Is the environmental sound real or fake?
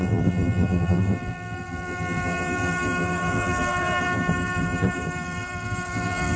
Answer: fake